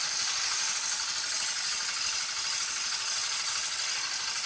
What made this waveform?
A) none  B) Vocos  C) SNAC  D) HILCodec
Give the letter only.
A